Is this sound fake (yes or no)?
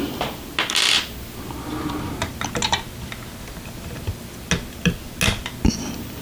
no